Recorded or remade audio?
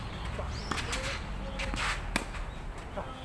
recorded